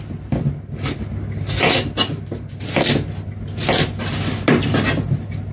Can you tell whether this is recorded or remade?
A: recorded